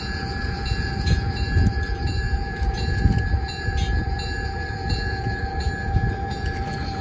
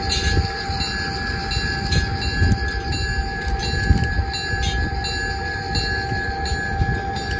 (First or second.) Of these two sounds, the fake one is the first